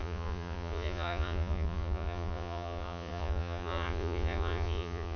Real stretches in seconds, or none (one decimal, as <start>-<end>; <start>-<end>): none